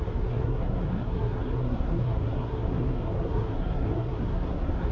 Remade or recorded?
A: remade